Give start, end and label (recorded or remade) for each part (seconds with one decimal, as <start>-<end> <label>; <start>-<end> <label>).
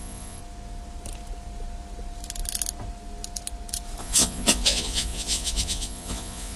0.0-0.4 remade; 0.4-4.0 recorded; 4.0-6.6 remade